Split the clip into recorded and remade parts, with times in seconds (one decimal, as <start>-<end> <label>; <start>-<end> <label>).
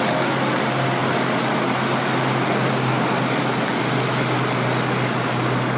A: 0.0-5.8 recorded